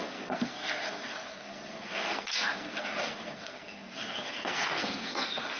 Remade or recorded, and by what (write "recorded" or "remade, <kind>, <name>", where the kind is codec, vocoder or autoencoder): remade, codec, SNAC